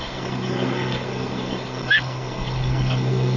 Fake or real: fake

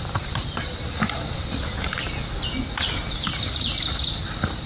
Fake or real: real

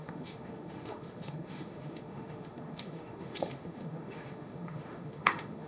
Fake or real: fake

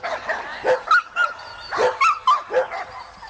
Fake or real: real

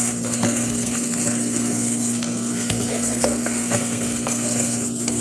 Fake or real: fake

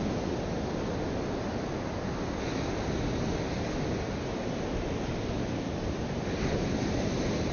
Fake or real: real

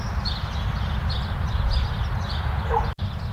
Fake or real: real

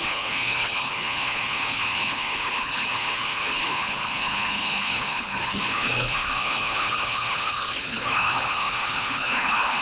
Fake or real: fake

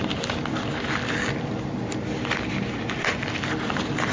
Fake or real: real